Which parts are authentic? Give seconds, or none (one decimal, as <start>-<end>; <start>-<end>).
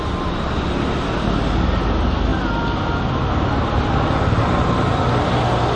0.0-5.8